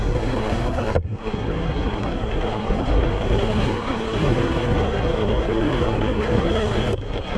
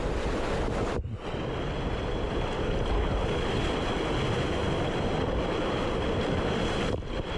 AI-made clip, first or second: first